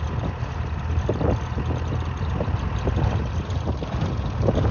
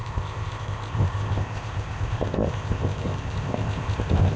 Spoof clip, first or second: second